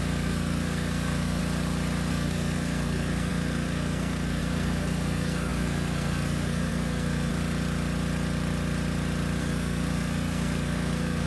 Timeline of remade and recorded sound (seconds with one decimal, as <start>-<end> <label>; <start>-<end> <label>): 0.0-1.4 remade; 1.4-2.1 recorded; 2.1-7.3 remade; 7.3-9.4 recorded; 9.4-11.3 remade